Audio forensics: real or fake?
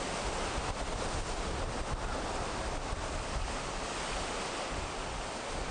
real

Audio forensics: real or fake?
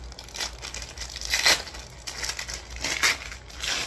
real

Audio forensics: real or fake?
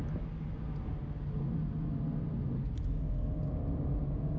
real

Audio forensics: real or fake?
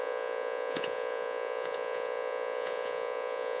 fake